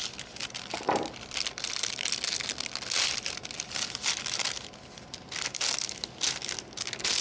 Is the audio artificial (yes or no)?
no